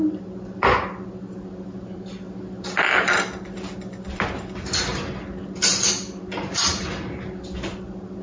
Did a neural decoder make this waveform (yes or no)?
no